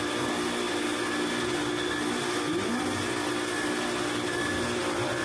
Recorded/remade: recorded